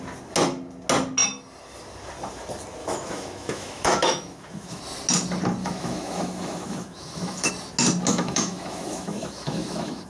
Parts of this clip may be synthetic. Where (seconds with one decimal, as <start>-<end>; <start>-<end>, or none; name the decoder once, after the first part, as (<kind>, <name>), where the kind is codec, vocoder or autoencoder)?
2.8-4.8 (autoencoder, DAC-VAE); 5.6-7.5; 8.1-10.1